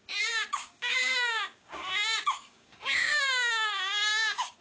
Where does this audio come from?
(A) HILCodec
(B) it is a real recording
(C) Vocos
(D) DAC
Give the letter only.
D